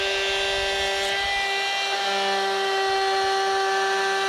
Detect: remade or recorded recorded